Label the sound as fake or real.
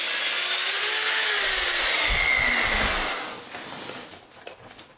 real